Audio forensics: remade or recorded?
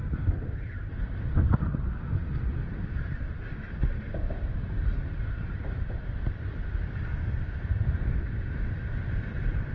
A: recorded